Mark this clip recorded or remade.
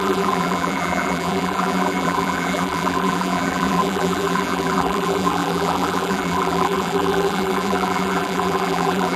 remade